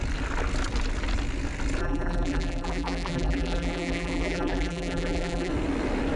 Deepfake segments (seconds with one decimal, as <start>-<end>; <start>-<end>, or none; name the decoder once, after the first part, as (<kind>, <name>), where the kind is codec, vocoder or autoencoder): 1.8-5.5 (vocoder, BigVGAN v2)